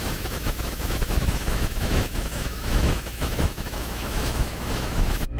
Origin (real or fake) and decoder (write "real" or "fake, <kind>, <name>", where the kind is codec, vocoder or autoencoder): fake, autoencoder, DAC-VAE